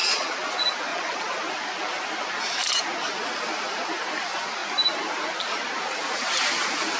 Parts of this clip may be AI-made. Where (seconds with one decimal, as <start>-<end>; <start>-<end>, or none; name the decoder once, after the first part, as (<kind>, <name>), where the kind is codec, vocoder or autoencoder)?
0.0-0.5 (vocoder, Vocos); 0.9-1.4